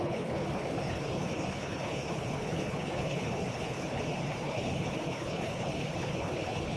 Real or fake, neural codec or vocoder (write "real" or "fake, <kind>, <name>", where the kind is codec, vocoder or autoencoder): fake, codec, HILCodec